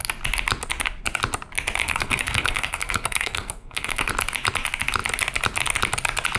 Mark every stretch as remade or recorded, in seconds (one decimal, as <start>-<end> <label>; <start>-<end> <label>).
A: 0.0-1.8 recorded; 1.8-4.1 remade; 4.1-6.4 recorded